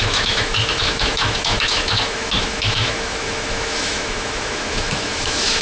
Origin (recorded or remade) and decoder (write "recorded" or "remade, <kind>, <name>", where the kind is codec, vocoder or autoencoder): remade, autoencoder, DAC-VAE